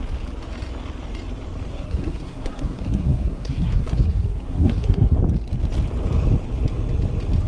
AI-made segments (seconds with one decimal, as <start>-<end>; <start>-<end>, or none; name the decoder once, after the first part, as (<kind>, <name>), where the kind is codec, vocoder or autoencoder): 1.7-5.2 (codec, SNAC)